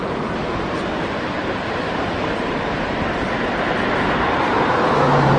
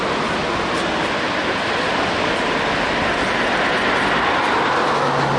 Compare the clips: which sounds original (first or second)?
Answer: second